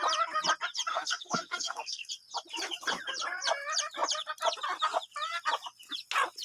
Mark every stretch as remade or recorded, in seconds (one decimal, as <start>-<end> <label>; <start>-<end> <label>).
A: 0.0-0.9 recorded; 0.9-2.1 remade; 2.1-6.4 recorded